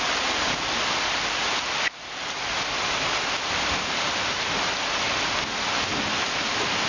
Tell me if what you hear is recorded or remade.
recorded